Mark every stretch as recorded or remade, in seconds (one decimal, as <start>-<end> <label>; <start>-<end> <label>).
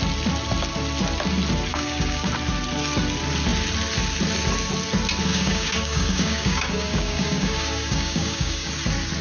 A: 0.0-1.7 recorded; 1.7-2.3 remade; 2.3-5.3 recorded; 5.3-8.7 remade; 8.7-9.2 recorded